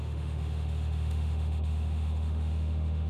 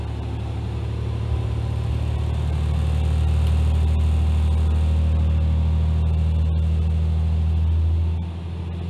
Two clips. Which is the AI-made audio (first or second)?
first